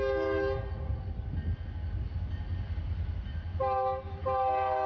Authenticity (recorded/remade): recorded